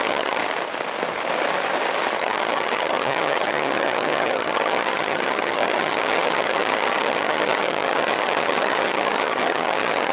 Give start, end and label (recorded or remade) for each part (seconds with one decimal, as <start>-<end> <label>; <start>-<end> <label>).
0.0-0.4 remade; 0.4-2.2 recorded; 2.2-10.1 remade